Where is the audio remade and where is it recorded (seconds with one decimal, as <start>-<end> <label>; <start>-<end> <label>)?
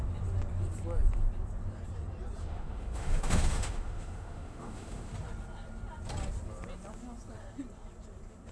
0.0-2.4 recorded; 2.4-5.1 remade; 5.1-8.5 recorded